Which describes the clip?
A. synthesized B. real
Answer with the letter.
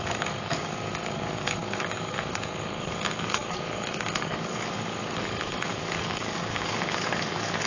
A